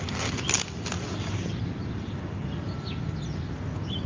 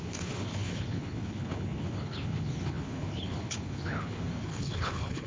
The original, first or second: first